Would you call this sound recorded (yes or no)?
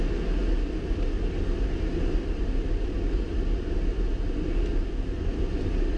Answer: yes